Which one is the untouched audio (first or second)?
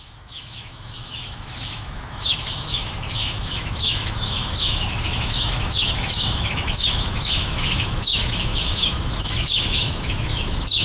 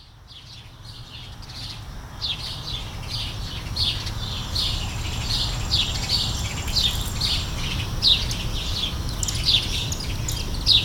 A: second